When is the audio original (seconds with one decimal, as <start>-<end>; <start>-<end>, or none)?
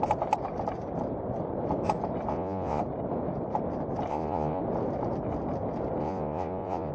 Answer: 0.0-2.3; 2.8-4.1; 4.6-6.0